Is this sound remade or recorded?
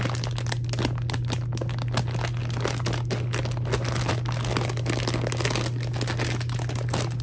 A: recorded